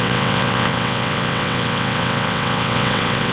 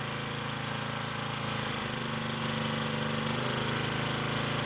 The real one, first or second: second